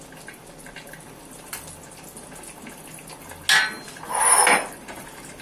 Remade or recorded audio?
recorded